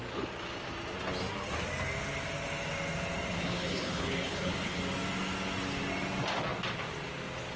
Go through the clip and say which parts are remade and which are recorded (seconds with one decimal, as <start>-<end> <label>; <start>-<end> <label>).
0.0-3.3 recorded; 3.3-4.8 remade; 4.8-7.6 recorded